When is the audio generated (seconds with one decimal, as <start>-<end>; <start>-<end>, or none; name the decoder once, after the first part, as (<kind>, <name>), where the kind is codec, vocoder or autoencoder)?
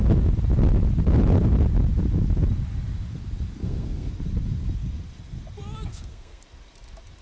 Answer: 3.6-4.1 (codec, SNAC); 5.9-6.4